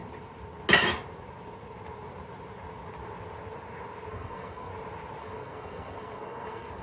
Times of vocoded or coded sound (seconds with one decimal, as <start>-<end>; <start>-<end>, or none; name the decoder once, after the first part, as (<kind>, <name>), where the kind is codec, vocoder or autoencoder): 4.1-4.7 (codec, SNAC); 5.2-6.8